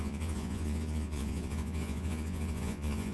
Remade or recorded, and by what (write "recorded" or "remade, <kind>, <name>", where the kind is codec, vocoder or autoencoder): remade, vocoder, Vocos